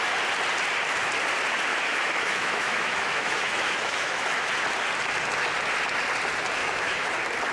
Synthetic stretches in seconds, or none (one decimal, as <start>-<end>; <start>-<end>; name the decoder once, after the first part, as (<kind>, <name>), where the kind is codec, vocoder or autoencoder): 1.7-4.5 (autoencoder, DAC-VAE); 6.6-7.1